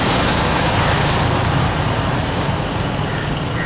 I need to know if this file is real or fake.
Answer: real